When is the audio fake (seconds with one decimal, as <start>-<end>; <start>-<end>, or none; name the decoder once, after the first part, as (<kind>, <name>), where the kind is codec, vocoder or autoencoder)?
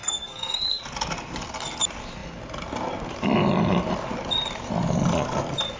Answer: 0.0-0.8 (codec, SNAC)